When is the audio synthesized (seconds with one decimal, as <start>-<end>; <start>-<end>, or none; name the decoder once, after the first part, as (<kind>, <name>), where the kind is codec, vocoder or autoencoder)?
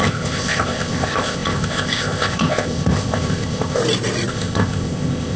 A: 0.0-3.8 (codec, ZipCodec); 4.3-5.4